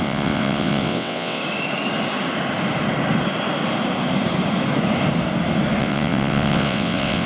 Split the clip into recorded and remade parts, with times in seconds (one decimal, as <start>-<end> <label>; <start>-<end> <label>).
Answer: 0.0-1.4 remade; 1.4-5.8 recorded; 5.8-7.3 remade